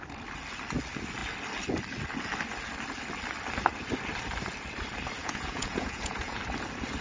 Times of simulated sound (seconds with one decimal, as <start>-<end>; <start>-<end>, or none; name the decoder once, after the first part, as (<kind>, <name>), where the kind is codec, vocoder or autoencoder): 5.2-6.4 (vocoder, Vocos)